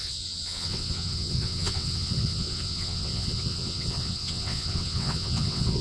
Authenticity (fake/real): fake